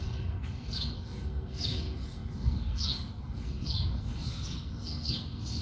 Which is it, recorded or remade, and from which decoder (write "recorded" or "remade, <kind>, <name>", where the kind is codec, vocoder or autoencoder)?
remade, codec, SNAC